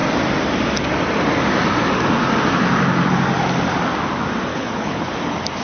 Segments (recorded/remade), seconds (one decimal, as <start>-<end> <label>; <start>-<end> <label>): 0.0-4.5 recorded; 4.5-5.1 remade; 5.1-5.6 recorded